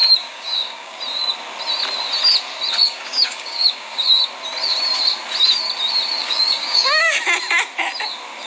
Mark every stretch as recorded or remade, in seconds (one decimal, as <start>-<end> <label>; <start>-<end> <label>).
0.0-1.0 remade; 1.0-2.8 recorded; 2.8-4.2 remade; 4.2-6.2 recorded; 6.2-7.0 remade; 7.0-8.5 recorded